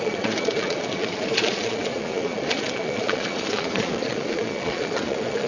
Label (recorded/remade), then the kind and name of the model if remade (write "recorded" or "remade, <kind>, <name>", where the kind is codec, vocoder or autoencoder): remade, vocoder, Vocos